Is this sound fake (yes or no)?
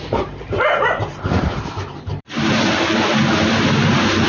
yes